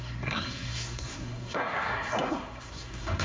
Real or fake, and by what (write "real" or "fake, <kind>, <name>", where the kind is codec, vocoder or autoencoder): fake, codec, SNAC